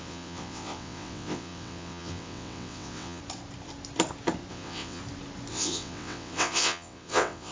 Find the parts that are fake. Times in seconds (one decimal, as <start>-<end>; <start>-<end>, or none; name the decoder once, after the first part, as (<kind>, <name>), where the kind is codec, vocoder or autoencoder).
0.0-3.2 (vocoder, WaveNeXt); 4.5-5.0; 5.5-7.5